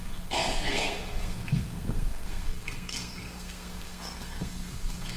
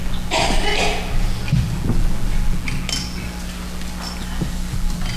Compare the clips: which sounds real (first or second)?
second